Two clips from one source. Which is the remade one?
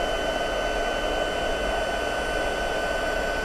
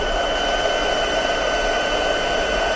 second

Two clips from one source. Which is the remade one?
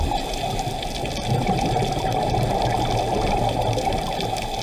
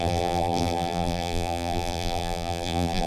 second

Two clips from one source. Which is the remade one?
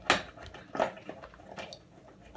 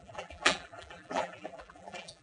second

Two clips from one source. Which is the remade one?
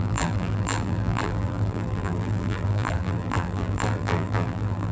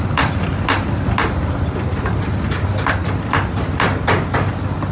first